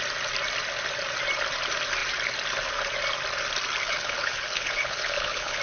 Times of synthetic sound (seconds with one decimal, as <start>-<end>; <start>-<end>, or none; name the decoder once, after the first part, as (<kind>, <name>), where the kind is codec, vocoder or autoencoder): 3.8-5.6 (codec, HILCodec)